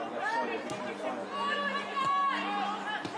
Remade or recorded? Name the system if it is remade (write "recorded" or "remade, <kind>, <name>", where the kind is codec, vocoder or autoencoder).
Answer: recorded